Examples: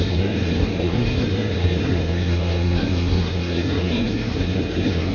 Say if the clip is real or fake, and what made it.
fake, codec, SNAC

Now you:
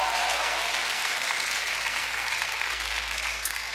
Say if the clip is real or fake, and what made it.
fake, codec, SNAC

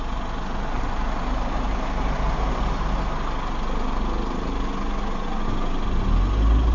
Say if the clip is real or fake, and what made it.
real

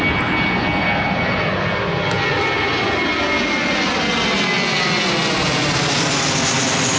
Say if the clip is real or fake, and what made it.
real